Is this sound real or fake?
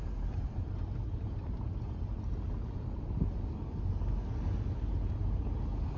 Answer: real